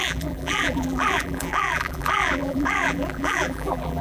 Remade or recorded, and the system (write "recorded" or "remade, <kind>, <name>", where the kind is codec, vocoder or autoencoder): remade, vocoder, BigVGAN v2